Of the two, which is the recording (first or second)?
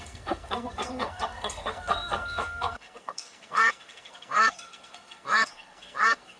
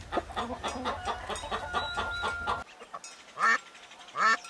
second